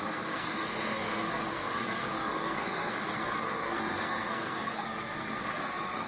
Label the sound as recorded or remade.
remade